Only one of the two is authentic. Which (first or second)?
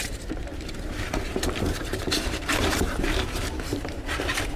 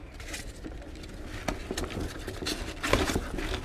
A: second